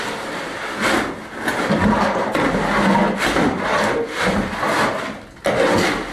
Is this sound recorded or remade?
recorded